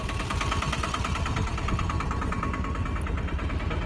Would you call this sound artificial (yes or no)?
yes